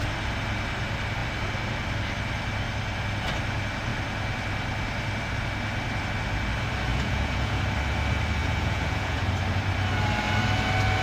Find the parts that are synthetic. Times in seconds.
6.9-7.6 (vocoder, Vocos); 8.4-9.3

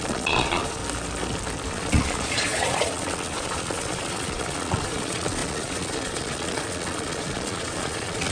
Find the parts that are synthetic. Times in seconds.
0.0-0.8 (vocoder, Vocos); 1.7-8.3

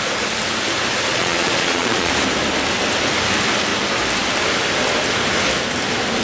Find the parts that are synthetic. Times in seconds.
1.1-2.1 (vocoder, Vocos)